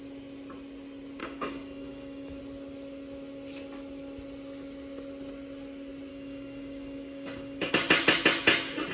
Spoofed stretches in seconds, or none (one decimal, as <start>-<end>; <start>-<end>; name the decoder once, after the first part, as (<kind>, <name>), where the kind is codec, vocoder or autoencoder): 1.2-2.4 (codec, DAC); 6.1-7.7